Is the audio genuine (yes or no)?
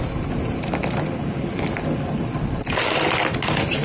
yes